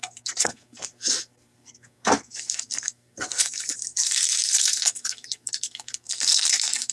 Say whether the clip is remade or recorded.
remade